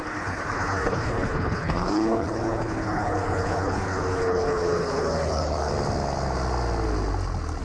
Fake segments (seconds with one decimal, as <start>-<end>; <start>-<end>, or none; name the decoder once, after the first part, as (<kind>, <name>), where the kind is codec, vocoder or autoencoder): 0.0-5.7 (codec, HILCodec)